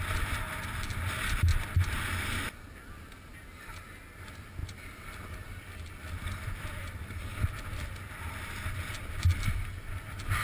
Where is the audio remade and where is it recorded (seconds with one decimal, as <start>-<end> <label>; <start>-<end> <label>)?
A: 0.0-10.4 recorded